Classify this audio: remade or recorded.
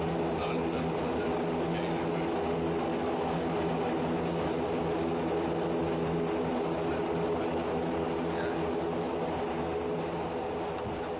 recorded